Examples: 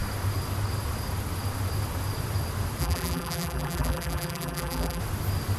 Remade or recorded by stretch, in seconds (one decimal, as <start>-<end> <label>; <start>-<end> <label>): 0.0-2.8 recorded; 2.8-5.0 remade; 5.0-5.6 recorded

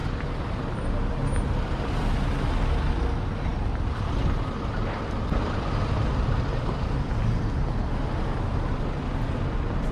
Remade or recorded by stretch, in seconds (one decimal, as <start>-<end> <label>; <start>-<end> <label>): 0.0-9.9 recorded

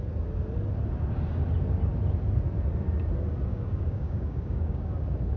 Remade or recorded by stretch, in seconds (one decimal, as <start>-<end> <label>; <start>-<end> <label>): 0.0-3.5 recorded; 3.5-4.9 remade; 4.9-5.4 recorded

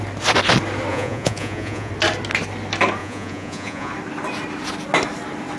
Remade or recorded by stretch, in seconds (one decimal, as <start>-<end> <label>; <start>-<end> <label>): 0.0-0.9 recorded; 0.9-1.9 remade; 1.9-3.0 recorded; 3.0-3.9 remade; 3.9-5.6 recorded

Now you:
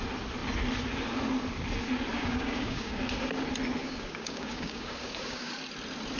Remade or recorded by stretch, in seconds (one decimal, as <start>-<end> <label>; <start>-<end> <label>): 0.0-2.1 recorded; 2.1-3.0 remade; 3.0-3.8 recorded; 3.8-5.5 remade; 5.5-6.2 recorded

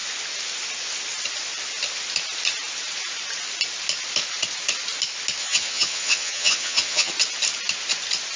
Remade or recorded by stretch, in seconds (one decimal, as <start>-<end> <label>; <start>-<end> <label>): 0.0-5.4 recorded; 5.4-7.1 remade; 7.1-8.4 recorded